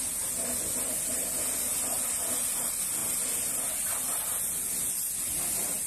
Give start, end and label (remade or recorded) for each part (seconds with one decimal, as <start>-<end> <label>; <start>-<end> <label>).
0.0-5.9 recorded